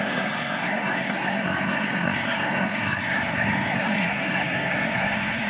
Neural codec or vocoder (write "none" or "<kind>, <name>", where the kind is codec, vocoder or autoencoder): codec, SNAC